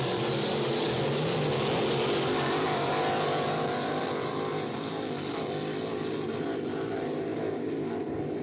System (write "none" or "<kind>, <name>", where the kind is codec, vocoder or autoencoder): none